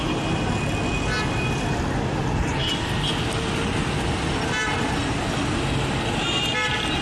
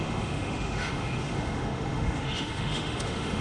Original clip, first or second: first